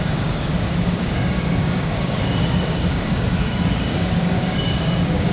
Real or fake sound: fake